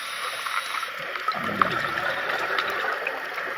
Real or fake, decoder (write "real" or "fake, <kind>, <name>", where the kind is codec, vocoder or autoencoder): fake, vocoder, BigVGAN v2